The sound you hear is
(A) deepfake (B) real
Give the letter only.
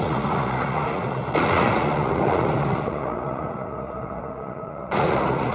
A